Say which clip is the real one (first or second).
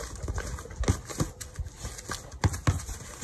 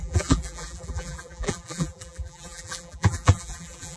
first